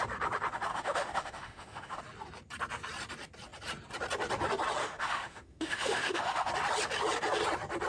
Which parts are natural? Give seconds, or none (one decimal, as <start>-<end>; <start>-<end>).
0.0-0.7; 2.0-4.8; 6.5-7.9